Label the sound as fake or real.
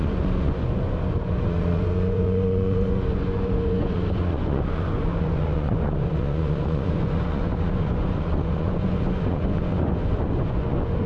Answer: fake